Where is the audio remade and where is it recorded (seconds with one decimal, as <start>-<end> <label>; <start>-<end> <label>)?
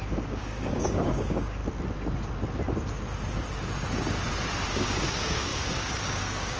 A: 0.0-1.6 remade; 1.6-4.7 recorded; 4.7-6.6 remade